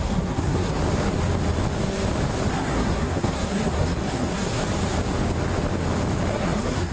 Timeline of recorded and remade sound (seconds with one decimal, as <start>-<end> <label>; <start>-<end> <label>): 0.0-0.8 remade; 0.8-2.5 recorded; 2.5-4.6 remade; 4.6-6.3 recorded; 6.3-6.9 remade